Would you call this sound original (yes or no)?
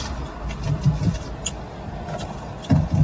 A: yes